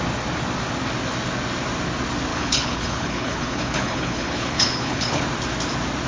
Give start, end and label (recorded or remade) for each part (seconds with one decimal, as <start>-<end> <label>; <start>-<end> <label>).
0.0-2.3 recorded; 2.3-5.2 remade; 5.2-6.1 recorded